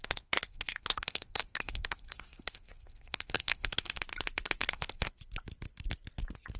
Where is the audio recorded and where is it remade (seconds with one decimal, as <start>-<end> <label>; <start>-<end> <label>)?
0.0-4.0 remade; 4.0-4.6 recorded; 4.6-5.1 remade; 5.1-6.6 recorded